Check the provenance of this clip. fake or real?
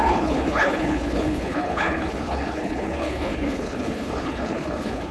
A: fake